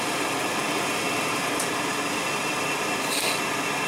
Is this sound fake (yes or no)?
no